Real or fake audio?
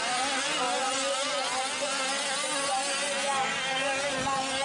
real